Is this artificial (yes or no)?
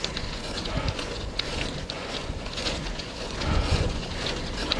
yes